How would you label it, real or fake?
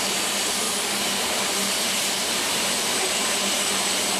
fake